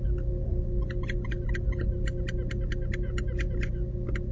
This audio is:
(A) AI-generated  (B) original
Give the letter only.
B